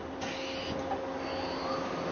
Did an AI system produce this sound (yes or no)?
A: no